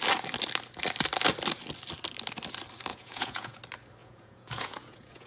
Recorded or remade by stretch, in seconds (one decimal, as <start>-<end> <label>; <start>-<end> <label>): 0.0-2.9 recorded; 2.9-3.6 remade; 3.6-4.0 recorded; 4.0-5.3 remade